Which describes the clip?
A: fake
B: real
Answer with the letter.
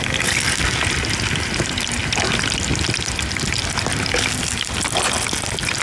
B